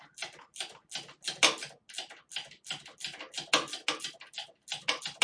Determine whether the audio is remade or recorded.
recorded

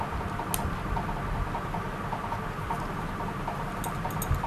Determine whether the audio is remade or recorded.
recorded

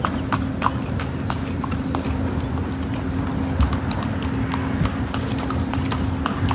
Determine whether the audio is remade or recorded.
recorded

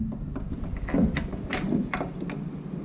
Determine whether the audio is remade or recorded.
recorded